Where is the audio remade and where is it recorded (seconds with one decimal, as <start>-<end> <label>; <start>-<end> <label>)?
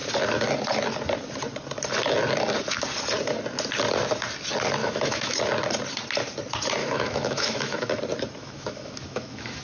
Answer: 0.0-4.8 recorded; 4.8-5.4 remade; 5.4-6.8 recorded; 6.8-8.0 remade; 8.0-8.4 recorded; 8.4-9.6 remade